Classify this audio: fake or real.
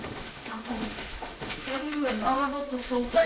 fake